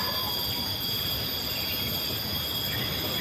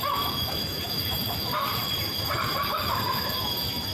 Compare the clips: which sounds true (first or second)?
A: first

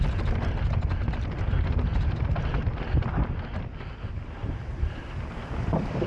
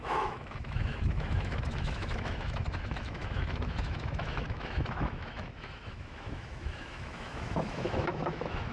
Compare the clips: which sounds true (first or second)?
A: first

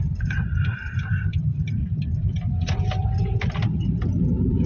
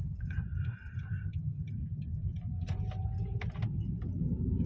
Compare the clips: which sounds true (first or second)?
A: second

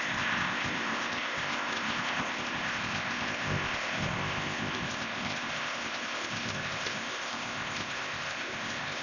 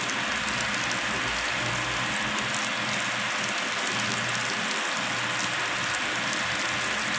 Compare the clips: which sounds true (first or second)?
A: second